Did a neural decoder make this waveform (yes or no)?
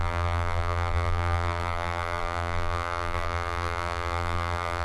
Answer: yes